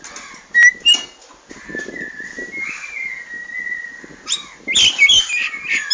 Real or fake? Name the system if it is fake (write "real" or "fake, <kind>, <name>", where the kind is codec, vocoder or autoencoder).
real